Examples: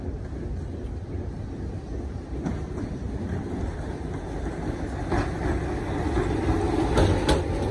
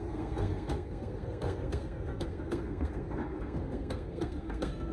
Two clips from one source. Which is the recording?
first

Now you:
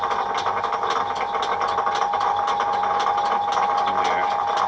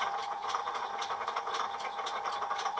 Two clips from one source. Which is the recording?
first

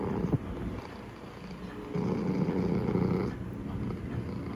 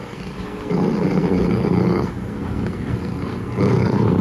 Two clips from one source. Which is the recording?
first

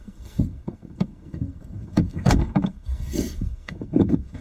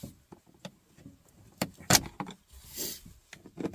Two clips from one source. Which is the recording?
second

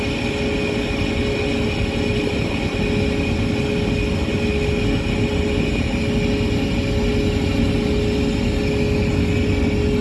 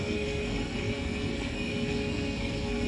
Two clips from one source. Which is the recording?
first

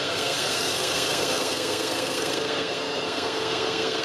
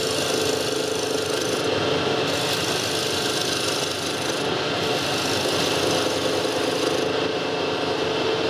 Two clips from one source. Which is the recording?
second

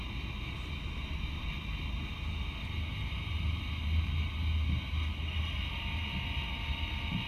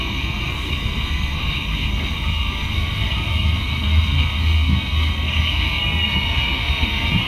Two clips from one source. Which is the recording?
first